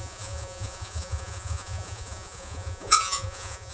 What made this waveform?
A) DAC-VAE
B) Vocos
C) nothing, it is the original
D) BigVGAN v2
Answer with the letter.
B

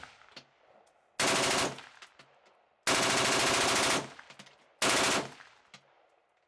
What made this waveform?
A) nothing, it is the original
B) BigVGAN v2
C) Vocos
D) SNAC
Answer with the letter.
A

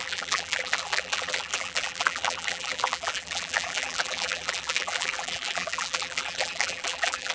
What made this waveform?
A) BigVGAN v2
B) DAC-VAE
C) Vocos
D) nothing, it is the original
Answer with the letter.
A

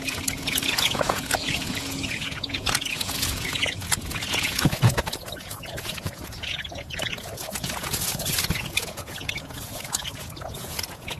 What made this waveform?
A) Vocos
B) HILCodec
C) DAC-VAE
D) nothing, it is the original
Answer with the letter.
A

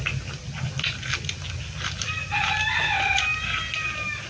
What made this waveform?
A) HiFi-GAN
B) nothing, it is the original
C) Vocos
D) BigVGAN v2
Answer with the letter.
B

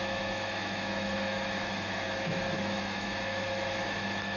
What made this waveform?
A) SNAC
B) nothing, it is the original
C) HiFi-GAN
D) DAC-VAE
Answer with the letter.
D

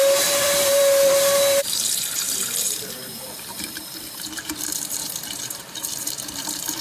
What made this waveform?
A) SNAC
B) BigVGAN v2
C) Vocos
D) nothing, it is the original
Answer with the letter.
B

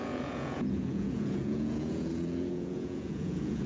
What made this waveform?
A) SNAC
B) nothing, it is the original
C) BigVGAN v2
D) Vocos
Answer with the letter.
D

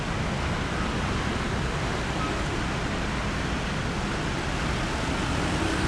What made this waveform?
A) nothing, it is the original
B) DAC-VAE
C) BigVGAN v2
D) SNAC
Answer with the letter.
A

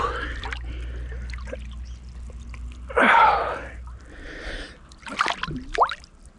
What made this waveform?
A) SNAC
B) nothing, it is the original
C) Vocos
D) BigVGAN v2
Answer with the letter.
B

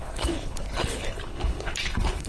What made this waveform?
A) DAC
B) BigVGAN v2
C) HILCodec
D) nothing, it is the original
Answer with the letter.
C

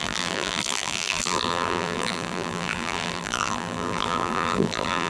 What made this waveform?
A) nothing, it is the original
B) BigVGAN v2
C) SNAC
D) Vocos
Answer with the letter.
B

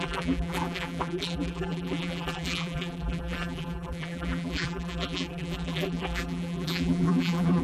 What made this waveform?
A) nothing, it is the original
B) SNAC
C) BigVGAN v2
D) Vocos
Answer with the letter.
C